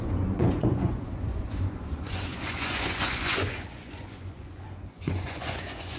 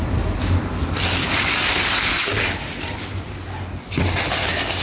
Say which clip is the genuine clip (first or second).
second